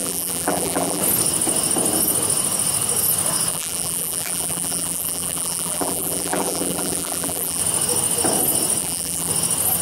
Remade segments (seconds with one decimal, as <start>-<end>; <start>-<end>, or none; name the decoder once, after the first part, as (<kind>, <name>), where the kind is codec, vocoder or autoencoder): 0.0-1.0 (vocoder, BigVGAN v2); 3.5-7.6; 8.8-9.3